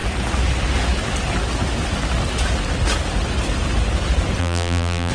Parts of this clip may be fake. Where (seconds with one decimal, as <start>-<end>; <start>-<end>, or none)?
4.4-5.1